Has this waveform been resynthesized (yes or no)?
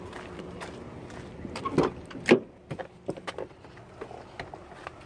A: no